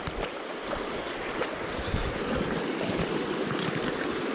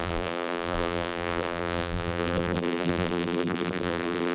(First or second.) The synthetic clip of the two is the second